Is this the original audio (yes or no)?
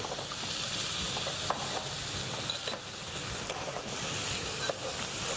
yes